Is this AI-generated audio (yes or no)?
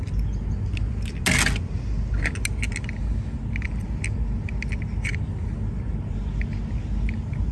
no